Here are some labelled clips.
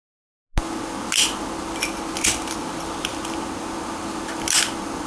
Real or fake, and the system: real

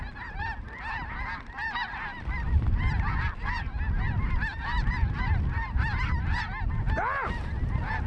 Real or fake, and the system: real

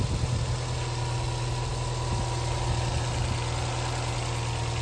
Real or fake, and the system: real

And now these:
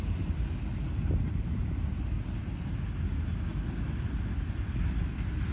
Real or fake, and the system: real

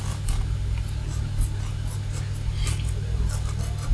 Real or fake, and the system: real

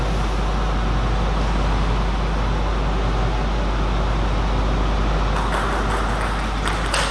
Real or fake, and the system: real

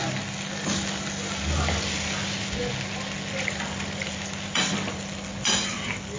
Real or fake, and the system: real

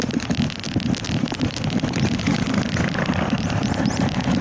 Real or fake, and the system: real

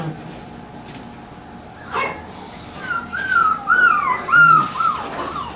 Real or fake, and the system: real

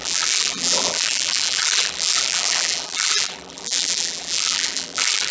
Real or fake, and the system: fake, vocoder, BigVGAN v2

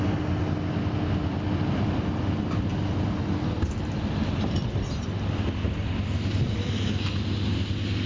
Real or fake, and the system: real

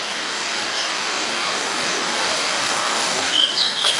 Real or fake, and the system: fake, codec, DAC